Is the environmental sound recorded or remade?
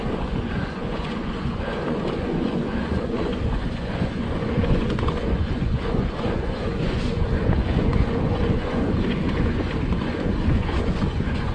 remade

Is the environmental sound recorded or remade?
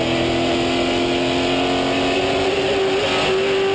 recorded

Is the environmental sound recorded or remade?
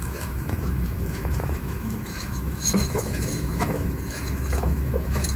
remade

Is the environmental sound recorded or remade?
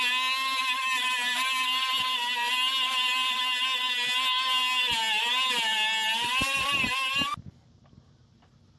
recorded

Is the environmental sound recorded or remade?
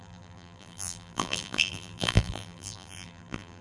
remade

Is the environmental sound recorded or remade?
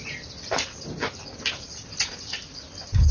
recorded